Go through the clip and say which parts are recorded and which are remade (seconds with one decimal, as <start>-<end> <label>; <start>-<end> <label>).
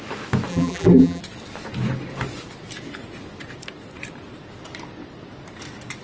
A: 0.0-0.5 recorded; 0.5-1.2 remade; 1.2-6.0 recorded